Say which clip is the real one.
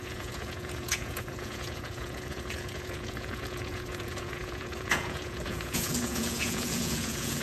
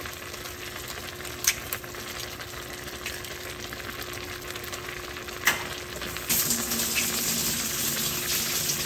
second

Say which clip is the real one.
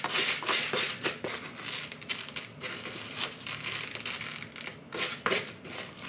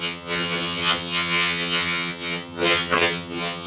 first